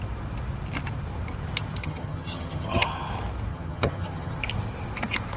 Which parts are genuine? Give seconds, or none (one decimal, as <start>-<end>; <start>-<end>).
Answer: 0.0-1.8; 3.1-3.5; 4.4-5.4